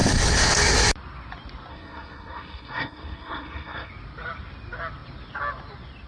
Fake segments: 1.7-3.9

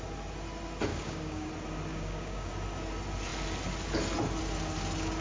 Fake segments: 0.9-1.5; 1.9-2.5

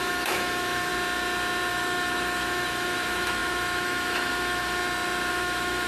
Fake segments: 0.0-0.9; 1.7-4.8; 5.3-5.9

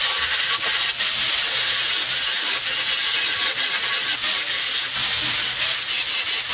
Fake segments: none

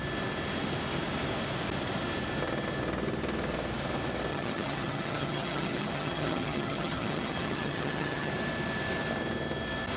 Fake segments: 4.3-8.3

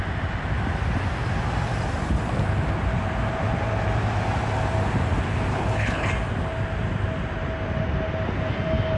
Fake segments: 5.5-6.1

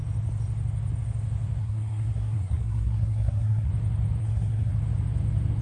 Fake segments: 1.6-3.7; 4.2-4.7